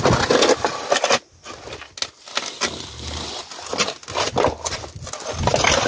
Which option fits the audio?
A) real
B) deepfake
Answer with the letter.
A